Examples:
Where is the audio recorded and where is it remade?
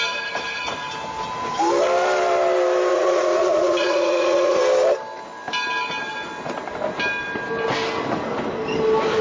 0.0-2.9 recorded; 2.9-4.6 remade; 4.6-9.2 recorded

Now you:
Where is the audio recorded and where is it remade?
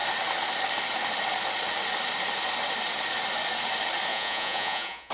0.0-4.1 recorded; 4.1-5.1 remade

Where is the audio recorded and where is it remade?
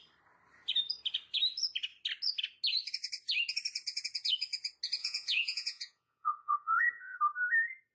0.0-5.0 recorded; 5.0-7.2 remade; 7.2-7.9 recorded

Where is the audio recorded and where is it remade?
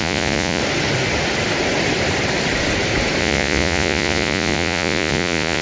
0.0-0.6 remade; 0.6-3.2 recorded; 3.2-5.6 remade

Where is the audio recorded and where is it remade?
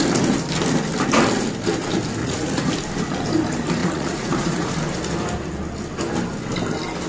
0.0-2.2 recorded; 2.2-2.7 remade; 2.7-3.8 recorded; 3.8-4.7 remade; 4.7-7.1 recorded